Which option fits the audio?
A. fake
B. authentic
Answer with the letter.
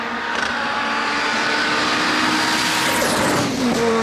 B